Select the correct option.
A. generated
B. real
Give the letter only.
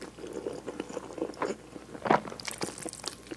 B